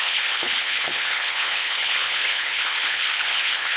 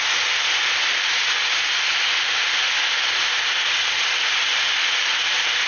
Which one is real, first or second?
second